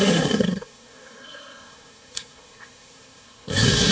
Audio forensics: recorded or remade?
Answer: remade